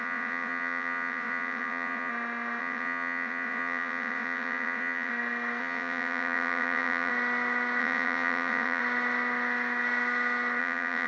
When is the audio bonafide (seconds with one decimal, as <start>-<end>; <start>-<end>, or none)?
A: 2.1-2.6; 5.1-5.6; 7.1-7.8; 8.8-10.6

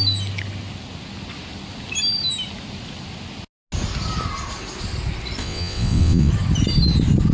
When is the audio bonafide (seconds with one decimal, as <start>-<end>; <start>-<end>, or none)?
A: 0.0-5.4; 6.3-7.3

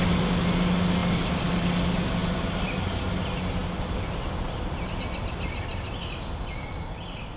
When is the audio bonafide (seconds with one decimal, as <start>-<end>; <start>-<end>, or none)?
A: 0.0-7.4

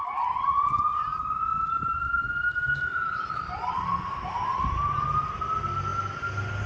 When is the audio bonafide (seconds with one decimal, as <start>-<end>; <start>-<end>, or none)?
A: 0.0-6.7

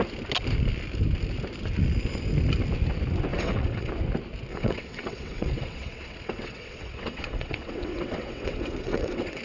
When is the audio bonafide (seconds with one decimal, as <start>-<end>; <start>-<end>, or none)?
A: 0.0-3.3; 3.9-4.5

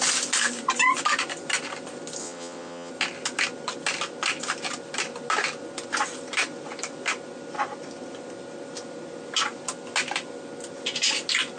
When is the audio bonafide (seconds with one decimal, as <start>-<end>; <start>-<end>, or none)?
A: 0.0-2.2; 2.9-11.6